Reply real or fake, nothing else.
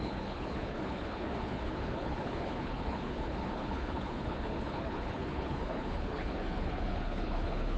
fake